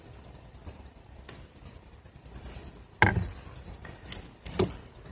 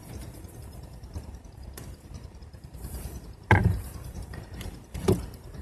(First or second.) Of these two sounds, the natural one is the first